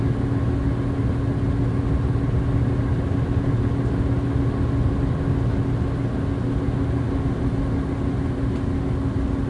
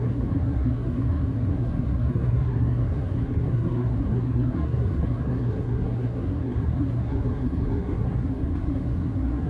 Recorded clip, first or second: first